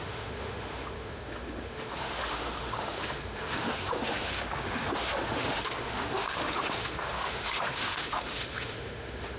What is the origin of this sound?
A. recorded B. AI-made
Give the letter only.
B